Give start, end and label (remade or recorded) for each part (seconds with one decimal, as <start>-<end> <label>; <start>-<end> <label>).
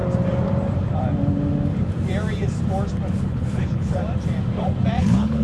0.0-3.2 recorded; 3.2-4.0 remade; 4.0-5.0 recorded; 5.0-5.4 remade